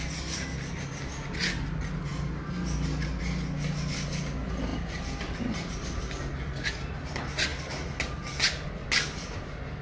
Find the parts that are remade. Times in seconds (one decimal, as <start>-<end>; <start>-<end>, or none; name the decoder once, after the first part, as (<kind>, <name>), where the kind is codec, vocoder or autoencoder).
none